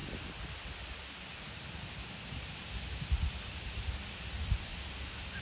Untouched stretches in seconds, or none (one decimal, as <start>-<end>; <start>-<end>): 0.0-3.2; 4.7-5.4